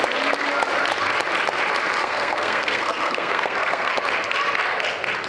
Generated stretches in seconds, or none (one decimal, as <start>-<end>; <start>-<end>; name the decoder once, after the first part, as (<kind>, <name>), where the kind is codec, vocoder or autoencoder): 2.0-3.9 (codec, SNAC)